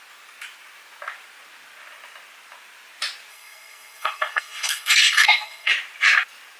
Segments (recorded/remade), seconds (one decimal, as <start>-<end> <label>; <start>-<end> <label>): 0.0-3.3 recorded; 3.3-5.7 remade; 5.7-6.6 recorded